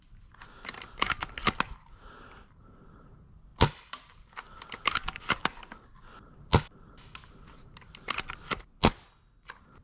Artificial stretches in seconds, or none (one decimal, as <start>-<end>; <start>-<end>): 5.0-5.6